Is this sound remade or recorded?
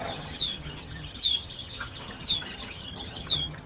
remade